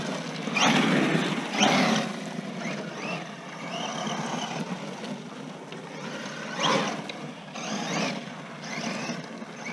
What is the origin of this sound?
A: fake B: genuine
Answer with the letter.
B